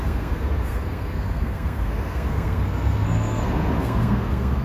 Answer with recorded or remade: remade